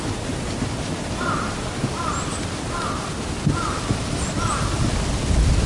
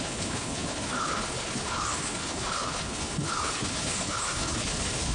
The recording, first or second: first